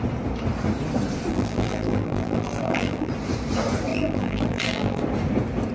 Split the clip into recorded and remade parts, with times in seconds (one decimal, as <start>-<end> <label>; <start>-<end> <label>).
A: 0.0-1.3 recorded; 1.3-3.1 remade; 3.1-3.9 recorded; 3.9-5.0 remade; 5.0-5.7 recorded